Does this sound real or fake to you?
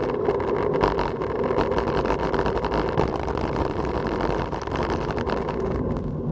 real